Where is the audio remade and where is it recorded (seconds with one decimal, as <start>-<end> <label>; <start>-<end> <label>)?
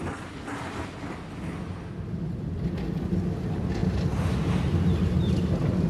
0.0-5.9 recorded